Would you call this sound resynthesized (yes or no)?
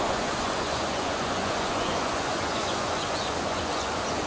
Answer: yes